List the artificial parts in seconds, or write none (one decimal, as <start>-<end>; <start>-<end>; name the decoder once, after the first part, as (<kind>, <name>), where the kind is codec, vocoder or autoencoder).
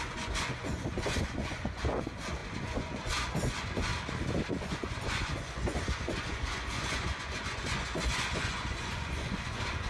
0.0-3.9 (vocoder, Vocos); 4.5-9.9